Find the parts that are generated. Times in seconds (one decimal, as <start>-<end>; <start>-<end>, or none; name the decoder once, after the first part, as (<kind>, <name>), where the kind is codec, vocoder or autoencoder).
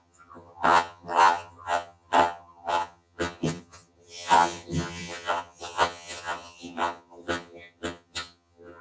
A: 0.0-8.8 (vocoder, HiFi-GAN)